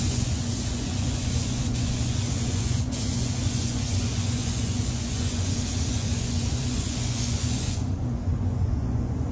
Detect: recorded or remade remade